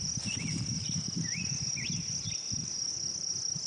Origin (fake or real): real